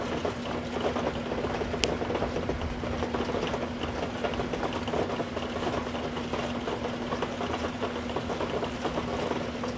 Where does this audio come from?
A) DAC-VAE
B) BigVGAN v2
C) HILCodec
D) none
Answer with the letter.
D